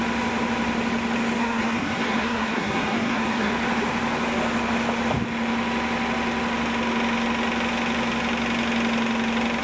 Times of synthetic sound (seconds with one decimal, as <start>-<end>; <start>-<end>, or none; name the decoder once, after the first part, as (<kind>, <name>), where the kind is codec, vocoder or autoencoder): 1.4-3.5 (codec, SNAC)